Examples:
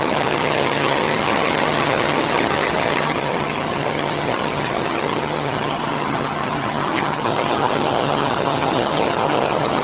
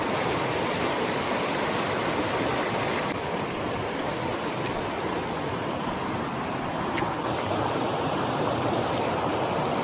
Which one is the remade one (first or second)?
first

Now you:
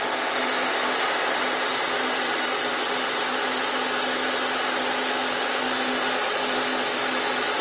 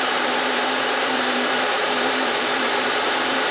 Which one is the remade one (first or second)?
second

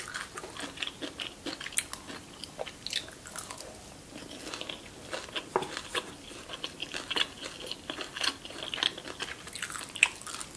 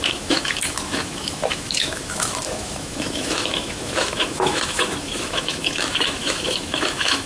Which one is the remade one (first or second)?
second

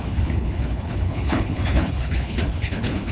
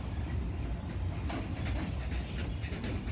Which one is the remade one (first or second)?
first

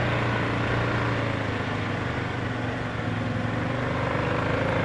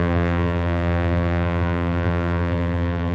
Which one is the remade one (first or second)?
second